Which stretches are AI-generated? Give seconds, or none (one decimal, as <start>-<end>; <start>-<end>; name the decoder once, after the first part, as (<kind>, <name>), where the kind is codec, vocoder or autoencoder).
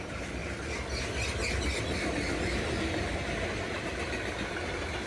none